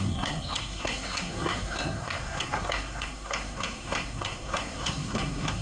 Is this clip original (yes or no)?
no